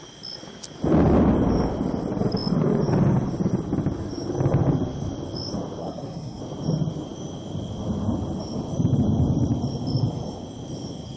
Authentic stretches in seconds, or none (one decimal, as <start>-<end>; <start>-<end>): 0.0-5.8; 6.4-11.2